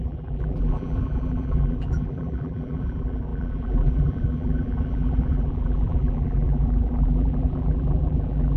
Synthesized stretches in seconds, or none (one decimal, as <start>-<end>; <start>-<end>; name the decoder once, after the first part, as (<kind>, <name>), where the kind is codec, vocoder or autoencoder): 0.0-8.6 (vocoder, BigVGAN v2)